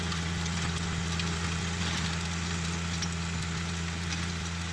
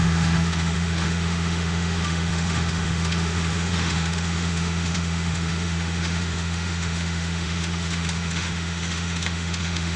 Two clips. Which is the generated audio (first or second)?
second